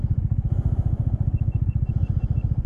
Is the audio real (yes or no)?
yes